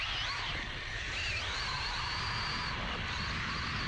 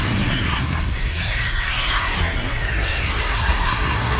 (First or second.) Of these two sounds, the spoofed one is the second